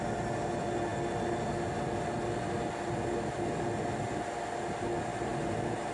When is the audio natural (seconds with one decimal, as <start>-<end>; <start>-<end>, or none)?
0.0-5.1